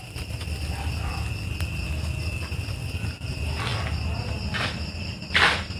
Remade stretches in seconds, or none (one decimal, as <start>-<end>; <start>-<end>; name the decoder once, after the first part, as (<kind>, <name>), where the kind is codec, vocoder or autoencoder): 0.0-1.1 (vocoder, BigVGAN v2); 3.1-3.7; 5.0-5.8